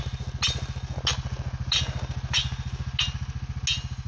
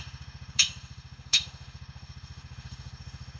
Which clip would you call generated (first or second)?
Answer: second